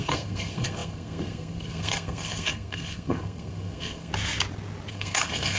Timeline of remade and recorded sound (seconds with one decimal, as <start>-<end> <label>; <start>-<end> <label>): 0.0-4.1 remade; 4.1-4.9 recorded; 4.9-5.6 remade